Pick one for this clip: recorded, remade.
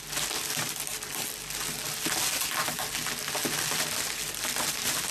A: recorded